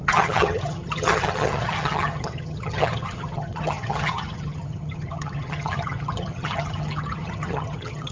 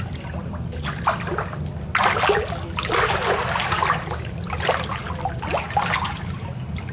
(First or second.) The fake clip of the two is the first